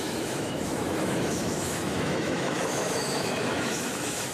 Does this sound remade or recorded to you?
remade